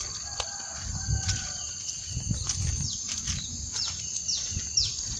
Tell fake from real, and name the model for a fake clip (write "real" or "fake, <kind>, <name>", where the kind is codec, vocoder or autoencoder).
real